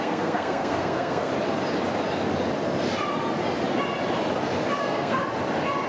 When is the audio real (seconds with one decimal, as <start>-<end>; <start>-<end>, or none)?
1.3-4.8; 5.2-5.9